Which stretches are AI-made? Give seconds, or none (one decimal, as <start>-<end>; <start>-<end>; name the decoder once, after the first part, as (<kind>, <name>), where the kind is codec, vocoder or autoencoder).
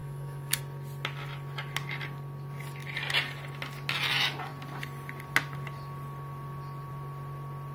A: 0.0-0.6 (codec, DAC)